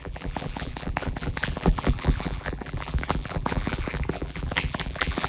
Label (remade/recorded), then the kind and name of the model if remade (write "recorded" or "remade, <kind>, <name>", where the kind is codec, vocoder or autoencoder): remade, vocoder, BigVGAN v2